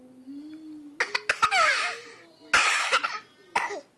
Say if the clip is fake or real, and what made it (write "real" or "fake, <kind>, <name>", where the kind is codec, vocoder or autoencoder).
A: real